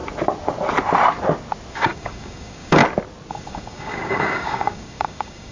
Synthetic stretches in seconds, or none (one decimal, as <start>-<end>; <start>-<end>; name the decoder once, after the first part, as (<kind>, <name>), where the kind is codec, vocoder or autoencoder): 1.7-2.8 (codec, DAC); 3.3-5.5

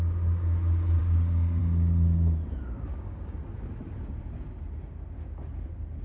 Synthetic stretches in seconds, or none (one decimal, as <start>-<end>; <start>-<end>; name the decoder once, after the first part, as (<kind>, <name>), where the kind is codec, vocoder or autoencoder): 1.0-1.6 (codec, DAC); 2.9-3.4

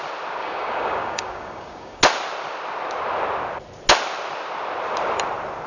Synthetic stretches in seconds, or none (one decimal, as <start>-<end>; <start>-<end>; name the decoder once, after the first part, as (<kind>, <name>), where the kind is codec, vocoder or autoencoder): 0.4-2.0 (codec, DAC)

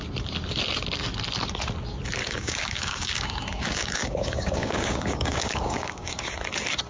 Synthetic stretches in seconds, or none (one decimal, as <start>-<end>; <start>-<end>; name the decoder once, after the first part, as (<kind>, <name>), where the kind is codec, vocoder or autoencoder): 2.2-6.3 (codec, DAC)

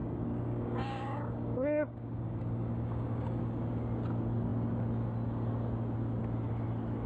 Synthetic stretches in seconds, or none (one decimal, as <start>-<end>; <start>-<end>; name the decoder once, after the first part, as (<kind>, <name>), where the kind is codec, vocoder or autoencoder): 0.0-3.4 (codec, DAC)

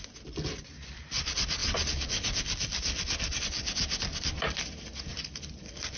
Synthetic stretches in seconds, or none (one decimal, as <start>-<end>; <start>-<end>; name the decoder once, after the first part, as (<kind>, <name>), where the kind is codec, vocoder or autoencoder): none